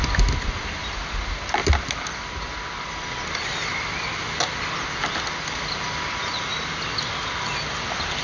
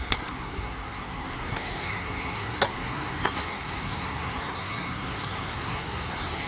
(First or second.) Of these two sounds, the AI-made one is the second